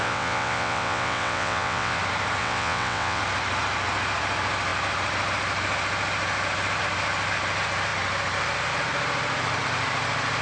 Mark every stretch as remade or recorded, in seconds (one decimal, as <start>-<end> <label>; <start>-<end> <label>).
0.0-2.0 remade; 2.0-2.4 recorded; 2.4-3.2 remade; 3.2-10.4 recorded